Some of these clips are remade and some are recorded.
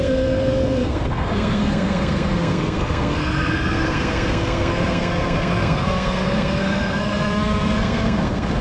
remade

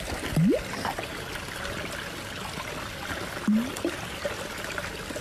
recorded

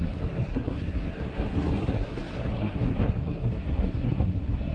remade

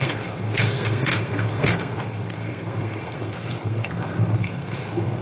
remade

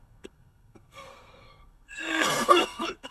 remade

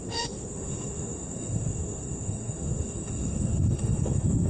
remade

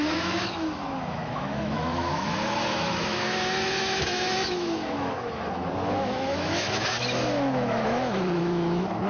remade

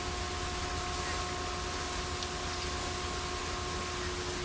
recorded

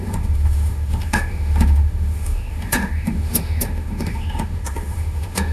remade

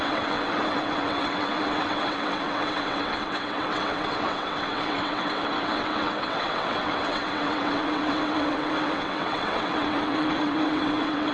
remade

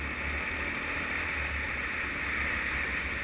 recorded